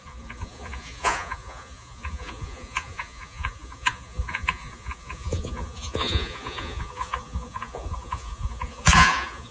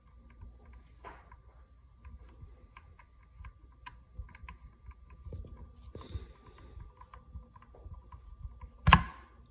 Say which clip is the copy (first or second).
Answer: first